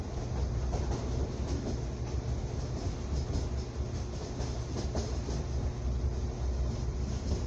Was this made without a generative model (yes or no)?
yes